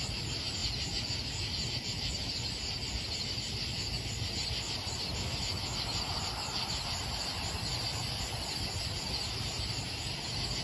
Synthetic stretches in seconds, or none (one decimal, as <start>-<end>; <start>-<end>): none